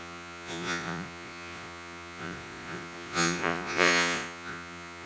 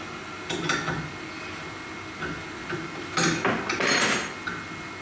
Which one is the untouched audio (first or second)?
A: second